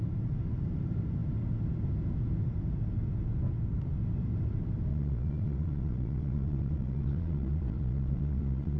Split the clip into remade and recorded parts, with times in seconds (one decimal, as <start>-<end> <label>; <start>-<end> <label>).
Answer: 0.0-4.9 recorded; 4.9-8.8 remade